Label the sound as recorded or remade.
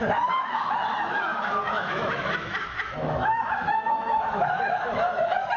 remade